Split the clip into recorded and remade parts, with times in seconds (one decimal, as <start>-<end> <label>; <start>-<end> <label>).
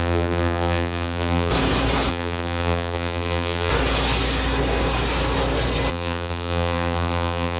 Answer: 0.0-1.5 remade; 1.5-2.1 recorded; 2.1-3.7 remade; 3.7-5.9 recorded; 5.9-7.6 remade